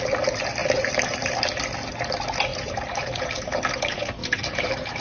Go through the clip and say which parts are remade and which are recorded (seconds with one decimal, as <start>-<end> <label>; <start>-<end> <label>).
0.0-0.6 recorded; 0.6-1.3 remade; 1.3-2.5 recorded; 2.5-3.4 remade; 3.4-4.2 recorded; 4.2-5.0 remade